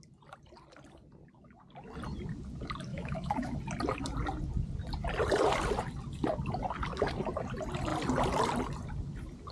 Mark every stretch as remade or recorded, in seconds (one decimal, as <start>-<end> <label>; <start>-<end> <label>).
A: 0.0-2.9 recorded; 2.9-3.6 remade; 3.6-9.5 recorded